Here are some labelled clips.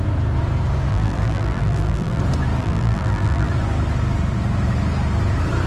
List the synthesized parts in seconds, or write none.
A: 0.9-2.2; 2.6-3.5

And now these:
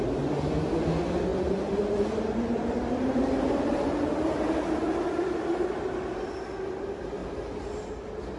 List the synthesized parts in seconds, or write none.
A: 1.3-6.3; 7.2-7.9

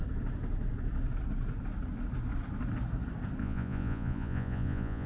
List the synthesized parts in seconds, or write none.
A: 3.4-5.1

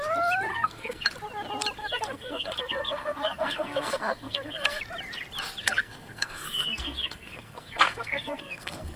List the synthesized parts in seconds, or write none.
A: 0.5-1.1; 1.8-4.8; 5.6-9.0

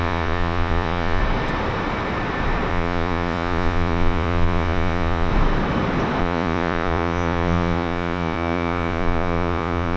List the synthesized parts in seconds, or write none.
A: 0.0-1.2; 2.7-5.3; 6.2-10.0